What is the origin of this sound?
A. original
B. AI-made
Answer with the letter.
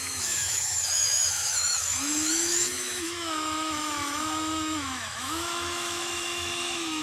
B